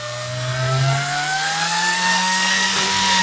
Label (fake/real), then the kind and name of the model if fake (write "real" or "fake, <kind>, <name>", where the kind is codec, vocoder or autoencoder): fake, codec, SNAC